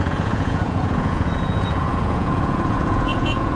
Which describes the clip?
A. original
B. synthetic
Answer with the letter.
B